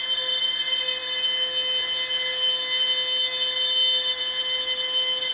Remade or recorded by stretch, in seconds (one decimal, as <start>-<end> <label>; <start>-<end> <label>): 0.0-5.3 recorded